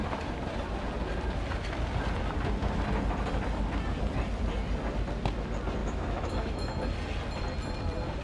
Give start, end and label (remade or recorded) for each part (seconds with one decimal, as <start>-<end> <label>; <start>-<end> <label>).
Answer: 0.0-5.8 recorded; 5.8-6.8 remade; 6.8-8.2 recorded